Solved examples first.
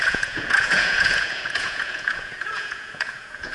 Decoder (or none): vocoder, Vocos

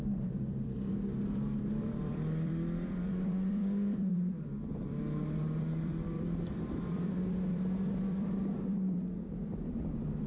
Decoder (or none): vocoder, BigVGAN v2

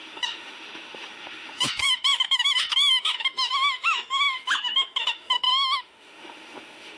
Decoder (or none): autoencoder, DAC-VAE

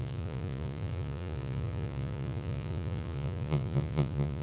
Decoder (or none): vocoder, Vocos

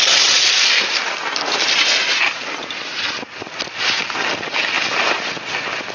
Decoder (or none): none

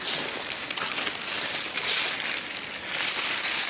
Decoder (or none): none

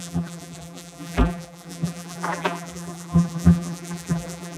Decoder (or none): vocoder, BigVGAN v2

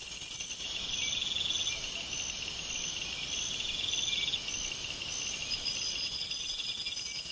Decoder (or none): none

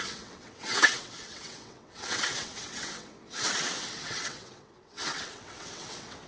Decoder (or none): vocoder, WaveNeXt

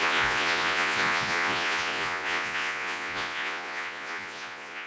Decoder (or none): vocoder, Vocos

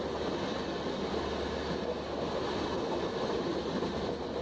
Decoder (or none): none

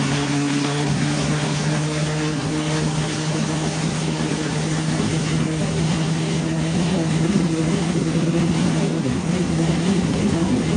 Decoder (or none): codec, SNAC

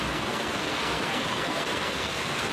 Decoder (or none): codec, SNAC